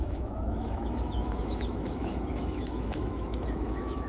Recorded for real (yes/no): no